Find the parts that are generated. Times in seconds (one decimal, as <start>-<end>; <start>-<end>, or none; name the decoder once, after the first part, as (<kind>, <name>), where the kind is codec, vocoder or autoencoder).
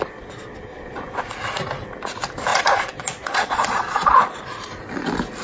0.7-1.2 (vocoder, Vocos); 2.5-4.4